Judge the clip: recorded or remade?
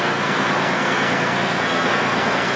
remade